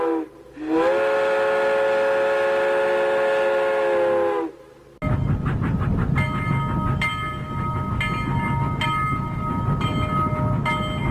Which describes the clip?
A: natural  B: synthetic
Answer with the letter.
A